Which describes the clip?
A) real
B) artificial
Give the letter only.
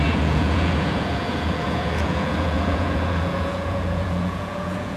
B